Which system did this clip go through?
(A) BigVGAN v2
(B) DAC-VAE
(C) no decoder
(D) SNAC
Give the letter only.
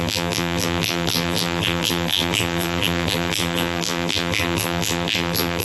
A